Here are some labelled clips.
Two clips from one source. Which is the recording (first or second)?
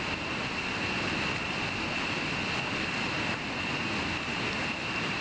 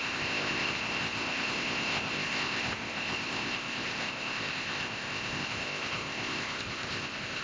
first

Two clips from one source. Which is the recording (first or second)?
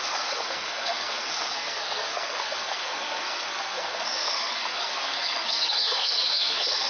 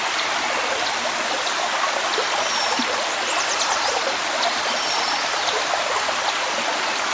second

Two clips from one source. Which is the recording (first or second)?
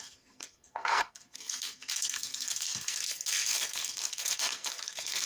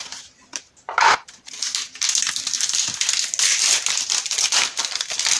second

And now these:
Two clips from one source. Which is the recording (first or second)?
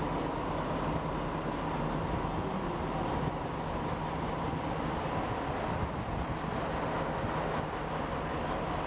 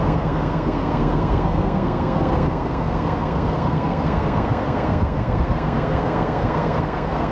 first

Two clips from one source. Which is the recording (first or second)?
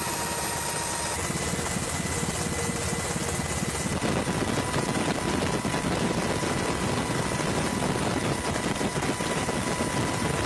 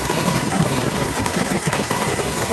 first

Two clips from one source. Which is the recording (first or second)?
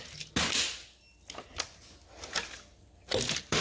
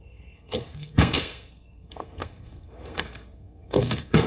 first